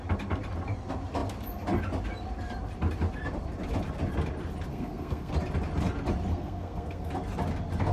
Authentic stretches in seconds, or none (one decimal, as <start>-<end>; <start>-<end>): 0.0-4.7; 5.3-6.3; 7.1-7.9